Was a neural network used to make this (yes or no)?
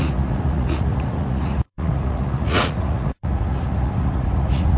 yes